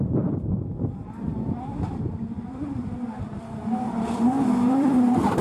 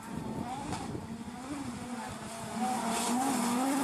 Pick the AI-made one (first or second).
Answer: first